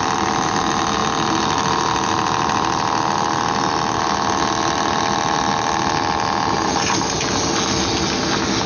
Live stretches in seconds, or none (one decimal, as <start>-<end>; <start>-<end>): 0.0-8.7